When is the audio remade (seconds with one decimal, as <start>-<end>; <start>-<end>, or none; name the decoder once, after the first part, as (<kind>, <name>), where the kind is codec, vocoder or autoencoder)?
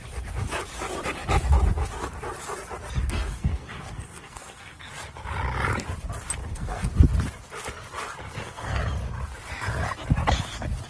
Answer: 3.0-4.9 (codec, SNAC); 6.4-6.9; 8.2-8.8